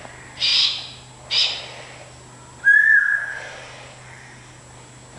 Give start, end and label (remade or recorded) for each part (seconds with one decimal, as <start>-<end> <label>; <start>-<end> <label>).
0.0-2.8 recorded; 2.8-4.6 remade; 4.6-5.2 recorded